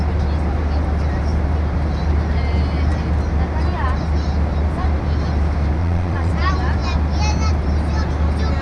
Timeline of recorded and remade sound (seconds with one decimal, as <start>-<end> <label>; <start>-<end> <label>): 0.0-5.8 recorded; 5.8-6.3 remade; 6.3-8.6 recorded